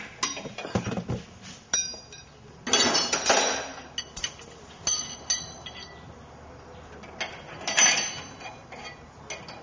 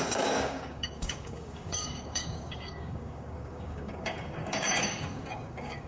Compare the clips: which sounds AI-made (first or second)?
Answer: second